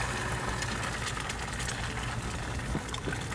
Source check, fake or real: real